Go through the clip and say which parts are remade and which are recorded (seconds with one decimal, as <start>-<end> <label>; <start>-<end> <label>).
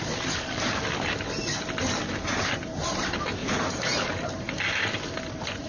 0.0-3.4 recorded; 3.4-5.7 remade